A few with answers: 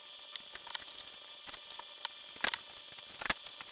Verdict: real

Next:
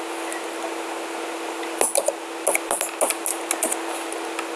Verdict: real